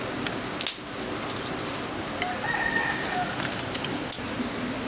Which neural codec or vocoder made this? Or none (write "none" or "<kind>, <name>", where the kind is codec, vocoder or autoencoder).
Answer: none